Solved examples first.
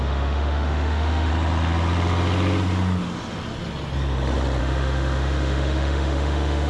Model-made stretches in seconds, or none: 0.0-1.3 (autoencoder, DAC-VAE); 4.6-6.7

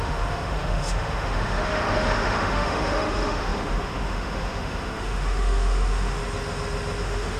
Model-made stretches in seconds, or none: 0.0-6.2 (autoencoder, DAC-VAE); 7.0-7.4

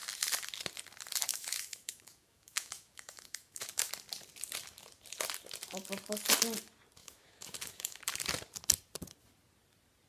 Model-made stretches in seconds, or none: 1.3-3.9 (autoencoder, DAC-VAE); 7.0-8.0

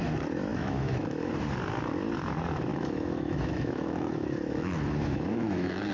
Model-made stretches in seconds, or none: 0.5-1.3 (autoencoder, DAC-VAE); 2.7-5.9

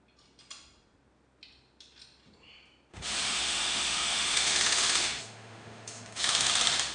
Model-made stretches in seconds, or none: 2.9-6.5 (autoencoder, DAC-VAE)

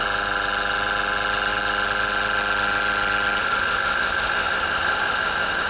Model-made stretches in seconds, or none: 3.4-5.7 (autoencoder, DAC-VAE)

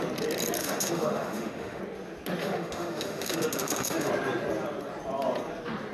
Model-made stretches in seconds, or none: 0.6-1.8 (autoencoder, DAC-VAE); 2.4-4.1